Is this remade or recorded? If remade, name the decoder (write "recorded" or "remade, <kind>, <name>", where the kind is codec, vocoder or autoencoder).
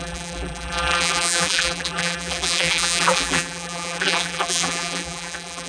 remade, vocoder, BigVGAN v2